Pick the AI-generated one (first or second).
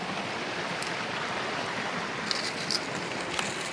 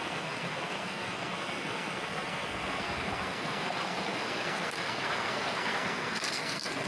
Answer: second